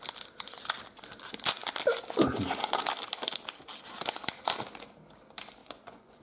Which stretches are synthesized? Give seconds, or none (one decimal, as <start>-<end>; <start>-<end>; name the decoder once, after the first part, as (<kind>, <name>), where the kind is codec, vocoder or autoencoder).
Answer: 5.6-6.2 (vocoder, Vocos)